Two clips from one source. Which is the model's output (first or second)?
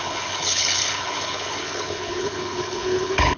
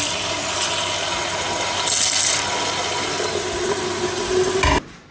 first